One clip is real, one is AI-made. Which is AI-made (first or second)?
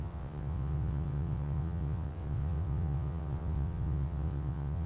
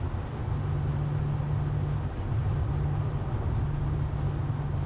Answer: first